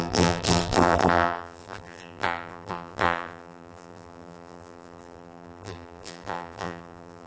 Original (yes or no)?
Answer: no